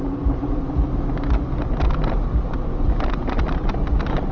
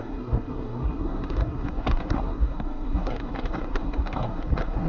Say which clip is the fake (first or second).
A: second